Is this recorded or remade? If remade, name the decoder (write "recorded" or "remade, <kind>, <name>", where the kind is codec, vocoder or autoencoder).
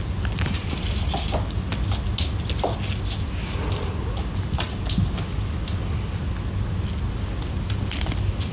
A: recorded